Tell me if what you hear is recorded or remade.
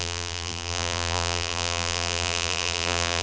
remade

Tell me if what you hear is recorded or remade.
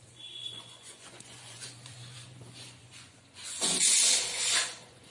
remade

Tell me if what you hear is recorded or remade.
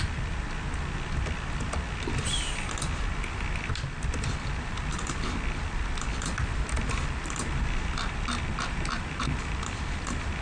remade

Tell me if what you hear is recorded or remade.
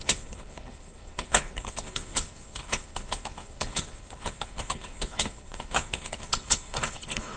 remade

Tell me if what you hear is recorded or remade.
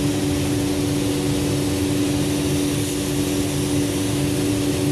recorded